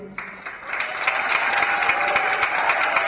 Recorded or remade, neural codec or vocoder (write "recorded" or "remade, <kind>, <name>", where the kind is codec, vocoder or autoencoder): recorded